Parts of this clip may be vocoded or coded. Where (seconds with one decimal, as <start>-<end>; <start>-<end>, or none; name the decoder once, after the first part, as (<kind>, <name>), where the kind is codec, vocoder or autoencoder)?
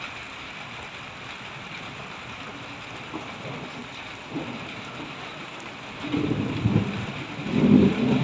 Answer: none